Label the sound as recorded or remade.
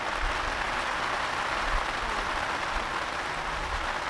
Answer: recorded